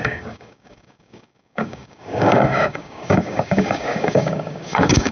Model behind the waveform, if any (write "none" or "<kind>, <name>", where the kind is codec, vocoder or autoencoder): codec, DAC